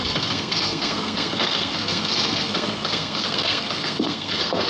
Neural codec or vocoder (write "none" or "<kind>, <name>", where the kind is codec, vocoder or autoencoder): codec, SNAC